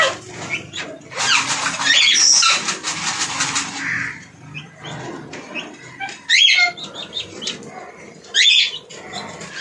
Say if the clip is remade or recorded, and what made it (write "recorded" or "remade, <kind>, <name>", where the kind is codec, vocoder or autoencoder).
recorded